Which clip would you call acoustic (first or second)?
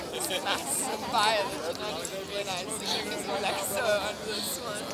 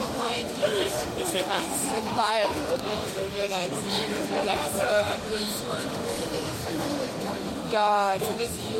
first